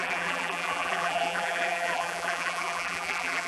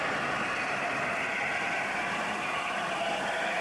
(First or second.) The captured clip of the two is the second